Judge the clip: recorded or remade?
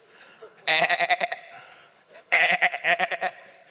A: remade